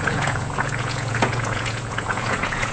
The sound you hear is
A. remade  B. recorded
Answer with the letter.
A